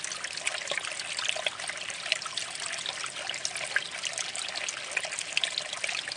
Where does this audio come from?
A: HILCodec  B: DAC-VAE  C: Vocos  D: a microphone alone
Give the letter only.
D